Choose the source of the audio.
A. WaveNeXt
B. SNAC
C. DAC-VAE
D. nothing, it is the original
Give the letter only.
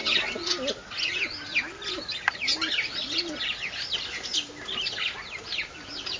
D